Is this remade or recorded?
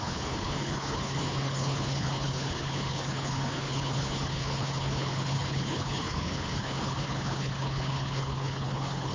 remade